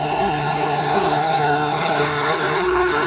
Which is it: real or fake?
fake